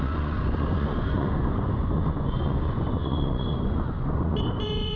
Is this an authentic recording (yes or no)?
no